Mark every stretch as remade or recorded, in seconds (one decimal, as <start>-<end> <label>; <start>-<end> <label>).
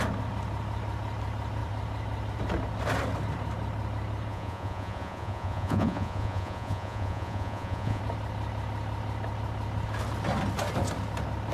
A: 0.0-4.3 recorded; 4.3-8.0 remade; 8.0-11.5 recorded